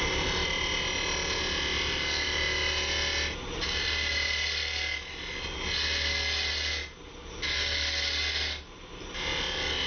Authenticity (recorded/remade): recorded